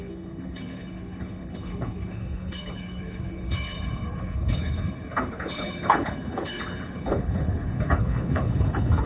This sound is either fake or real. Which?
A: fake